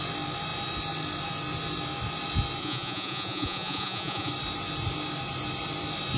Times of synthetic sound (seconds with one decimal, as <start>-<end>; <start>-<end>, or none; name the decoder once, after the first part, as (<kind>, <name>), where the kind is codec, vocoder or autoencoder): 2.6-4.3 (vocoder, Vocos)